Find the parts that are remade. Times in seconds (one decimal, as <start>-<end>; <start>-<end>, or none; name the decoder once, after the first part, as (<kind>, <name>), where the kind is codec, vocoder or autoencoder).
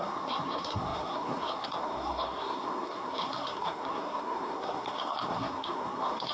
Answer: 0.0-6.3 (codec, SNAC)